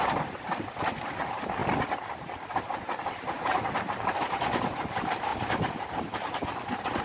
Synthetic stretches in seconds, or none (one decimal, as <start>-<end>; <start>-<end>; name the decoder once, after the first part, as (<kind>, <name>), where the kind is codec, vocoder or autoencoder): 0.0-1.6 (vocoder, BigVGAN v2); 2.6-7.0